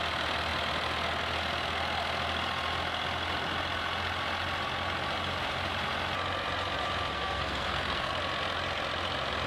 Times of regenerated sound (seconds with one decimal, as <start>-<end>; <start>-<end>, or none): 7.1-8.1